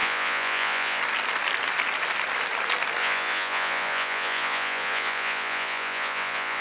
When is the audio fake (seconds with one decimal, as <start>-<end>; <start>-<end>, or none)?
0.0-1.0; 3.0-6.6